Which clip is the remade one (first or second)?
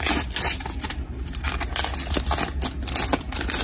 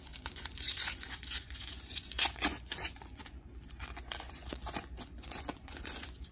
second